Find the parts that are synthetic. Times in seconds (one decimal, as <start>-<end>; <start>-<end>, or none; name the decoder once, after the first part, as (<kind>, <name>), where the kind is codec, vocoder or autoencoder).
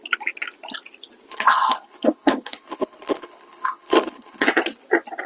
1.3-4.5 (codec, HILCodec)